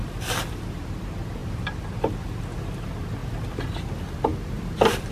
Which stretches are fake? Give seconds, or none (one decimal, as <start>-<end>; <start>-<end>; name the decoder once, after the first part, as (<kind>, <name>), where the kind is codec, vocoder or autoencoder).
0.0-0.9 (vocoder, BigVGAN v2); 1.4-2.6